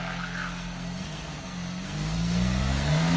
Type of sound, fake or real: fake